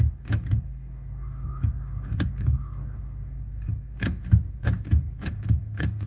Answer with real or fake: fake